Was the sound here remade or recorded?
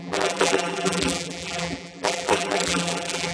remade